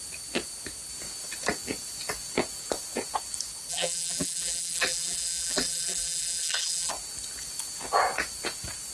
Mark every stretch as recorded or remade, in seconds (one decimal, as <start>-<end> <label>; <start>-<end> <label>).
0.0-3.7 recorded; 3.7-6.9 remade; 6.9-8.9 recorded